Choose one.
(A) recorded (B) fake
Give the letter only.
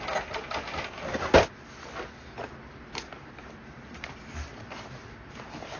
A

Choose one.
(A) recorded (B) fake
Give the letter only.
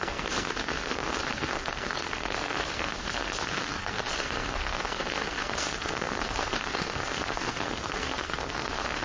B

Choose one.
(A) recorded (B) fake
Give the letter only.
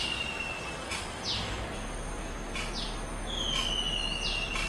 A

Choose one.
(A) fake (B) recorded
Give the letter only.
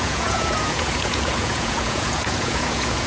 A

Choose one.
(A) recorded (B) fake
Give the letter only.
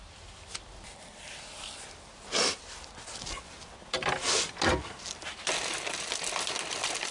A